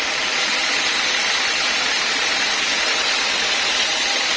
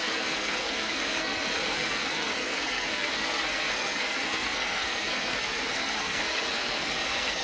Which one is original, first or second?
first